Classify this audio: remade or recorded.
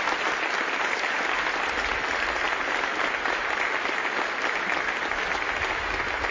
recorded